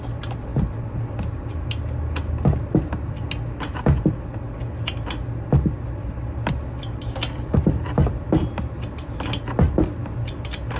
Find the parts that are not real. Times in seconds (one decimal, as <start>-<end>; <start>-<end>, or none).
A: none